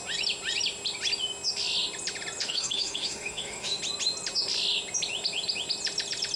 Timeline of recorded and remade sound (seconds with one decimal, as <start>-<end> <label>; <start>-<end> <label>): 0.0-2.4 recorded; 2.4-3.8 remade; 3.8-6.4 recorded